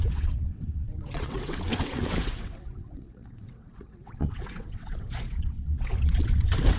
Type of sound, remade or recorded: remade